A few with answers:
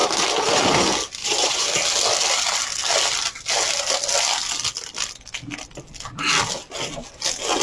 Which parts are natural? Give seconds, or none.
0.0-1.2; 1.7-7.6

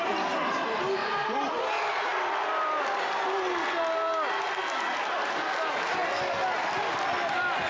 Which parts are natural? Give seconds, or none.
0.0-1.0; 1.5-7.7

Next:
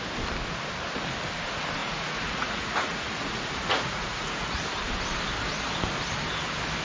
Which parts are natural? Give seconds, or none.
0.0-1.8; 4.6-6.8

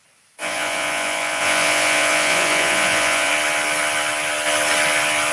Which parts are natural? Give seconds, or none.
0.0-0.4; 3.3-5.3

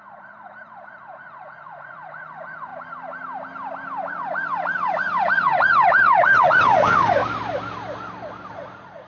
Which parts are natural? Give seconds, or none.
2.7-4.1; 7.2-8.5

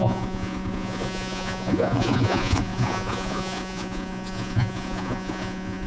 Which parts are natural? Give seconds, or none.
none

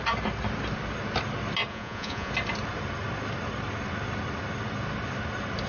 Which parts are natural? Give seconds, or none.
0.0-1.7; 2.3-5.7

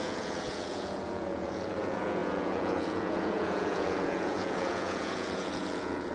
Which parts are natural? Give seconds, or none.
none